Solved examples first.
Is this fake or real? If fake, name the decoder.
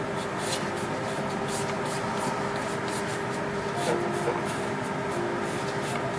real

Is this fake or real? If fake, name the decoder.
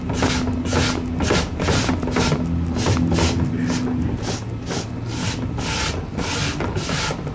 real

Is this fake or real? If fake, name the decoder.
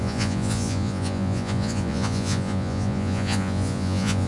fake, vocoder, Vocos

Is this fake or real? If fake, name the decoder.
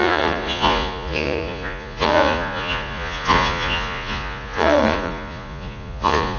fake, vocoder, Vocos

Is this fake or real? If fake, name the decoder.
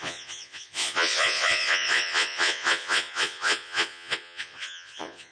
fake, vocoder, Vocos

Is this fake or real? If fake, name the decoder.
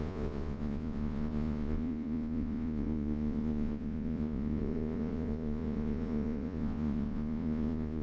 fake, vocoder, Vocos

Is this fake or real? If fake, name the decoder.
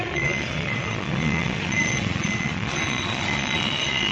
fake, vocoder, Vocos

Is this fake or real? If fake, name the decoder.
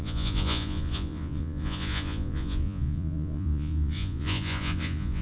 fake, vocoder, Vocos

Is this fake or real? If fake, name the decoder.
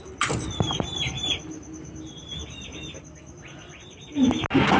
real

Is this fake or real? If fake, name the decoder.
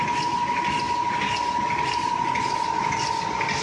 real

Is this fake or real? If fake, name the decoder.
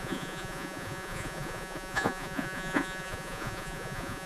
fake, vocoder, Vocos